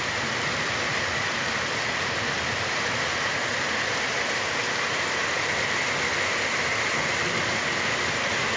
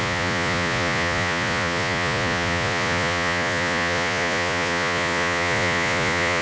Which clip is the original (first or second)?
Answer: first